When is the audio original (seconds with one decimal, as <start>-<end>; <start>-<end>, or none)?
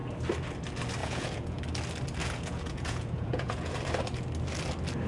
0.0-1.0; 1.6-2.2; 3.7-5.1